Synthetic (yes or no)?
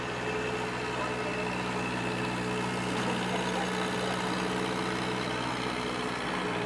no